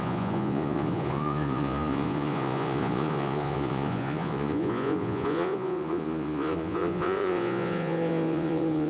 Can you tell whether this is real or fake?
fake